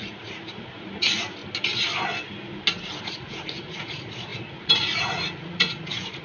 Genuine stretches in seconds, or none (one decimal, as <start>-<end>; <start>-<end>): 1.4-3.0